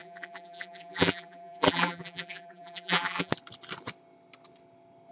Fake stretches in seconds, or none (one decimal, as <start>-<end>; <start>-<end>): 0.0-3.3

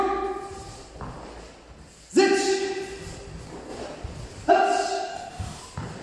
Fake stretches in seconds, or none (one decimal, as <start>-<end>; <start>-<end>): 5.1-5.6

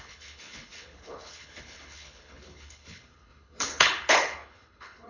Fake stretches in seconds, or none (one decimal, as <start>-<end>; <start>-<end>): 0.0-5.1

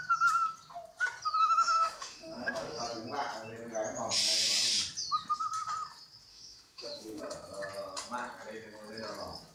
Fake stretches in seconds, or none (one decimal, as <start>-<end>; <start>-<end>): 1.4-2.8; 6.3-7.2

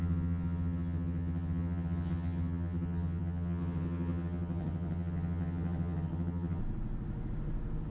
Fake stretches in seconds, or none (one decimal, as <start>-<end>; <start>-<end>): 0.0-6.6